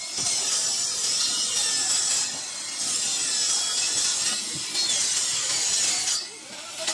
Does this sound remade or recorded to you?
recorded